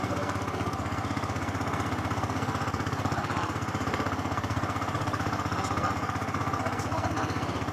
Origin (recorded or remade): remade